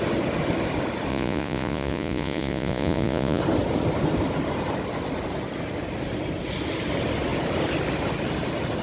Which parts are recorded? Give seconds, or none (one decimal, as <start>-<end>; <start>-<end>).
0.0-1.1; 3.4-8.8